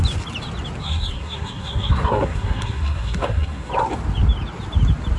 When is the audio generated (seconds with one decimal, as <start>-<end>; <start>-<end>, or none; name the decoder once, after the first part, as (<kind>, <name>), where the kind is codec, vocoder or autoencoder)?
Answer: 0.8-3.7 (codec, SNAC)